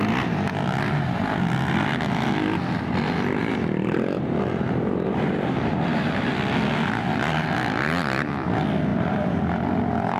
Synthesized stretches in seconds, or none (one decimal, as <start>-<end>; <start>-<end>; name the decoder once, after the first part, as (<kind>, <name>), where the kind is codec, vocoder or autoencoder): 3.4-6.3 (vocoder, BigVGAN v2); 8.9-9.4